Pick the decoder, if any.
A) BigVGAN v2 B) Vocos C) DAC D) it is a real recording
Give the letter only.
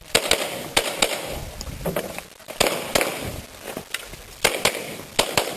D